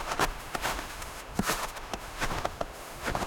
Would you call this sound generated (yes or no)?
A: yes